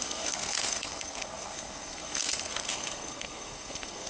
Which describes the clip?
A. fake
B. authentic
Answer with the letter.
A